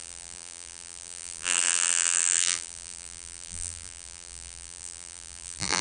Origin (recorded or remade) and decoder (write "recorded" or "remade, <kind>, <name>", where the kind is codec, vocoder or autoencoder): remade, vocoder, BigVGAN v2